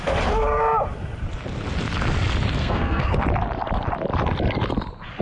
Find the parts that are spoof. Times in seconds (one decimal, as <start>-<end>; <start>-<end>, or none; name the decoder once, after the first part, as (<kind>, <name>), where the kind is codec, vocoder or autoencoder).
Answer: 2.6-3.2 (codec, SNAC)